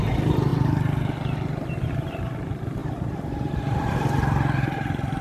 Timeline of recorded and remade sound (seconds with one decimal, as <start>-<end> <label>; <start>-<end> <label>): 0.0-5.2 recorded